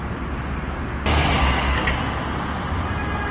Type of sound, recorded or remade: recorded